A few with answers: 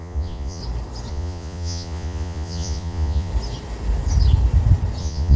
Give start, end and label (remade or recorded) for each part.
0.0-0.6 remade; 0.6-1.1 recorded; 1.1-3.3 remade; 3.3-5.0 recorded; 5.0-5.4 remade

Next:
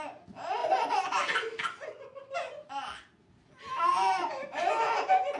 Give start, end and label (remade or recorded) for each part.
0.0-5.4 recorded

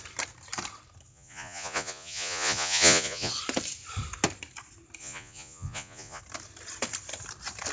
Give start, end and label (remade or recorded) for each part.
0.0-1.1 recorded; 1.1-3.3 remade; 3.3-5.0 recorded; 5.0-6.2 remade; 6.2-7.7 recorded

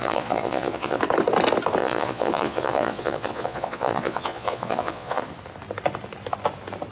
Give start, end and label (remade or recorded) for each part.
0.0-1.0 remade; 1.0-1.8 recorded; 1.8-5.2 remade; 5.2-6.9 recorded

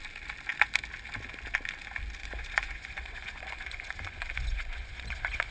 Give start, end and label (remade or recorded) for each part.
0.0-2.2 recorded; 2.2-5.5 remade